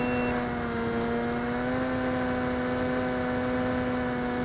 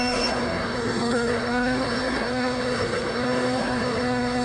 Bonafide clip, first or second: first